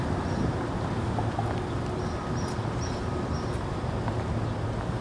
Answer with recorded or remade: recorded